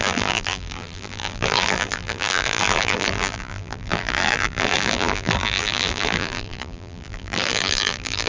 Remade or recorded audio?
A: remade